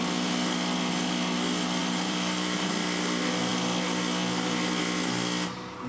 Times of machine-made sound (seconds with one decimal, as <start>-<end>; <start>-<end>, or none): 1.8-2.7